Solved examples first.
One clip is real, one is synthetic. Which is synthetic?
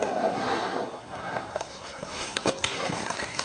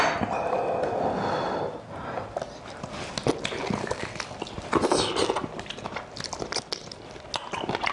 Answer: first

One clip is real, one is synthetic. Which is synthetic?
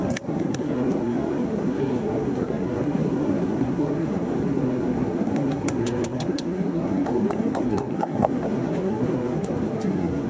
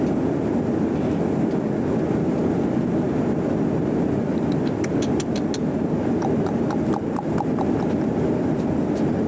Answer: first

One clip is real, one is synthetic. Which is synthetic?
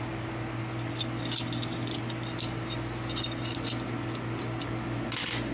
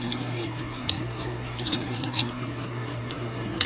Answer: second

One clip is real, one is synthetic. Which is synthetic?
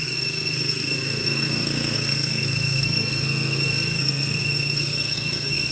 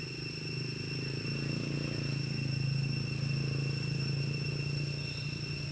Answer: first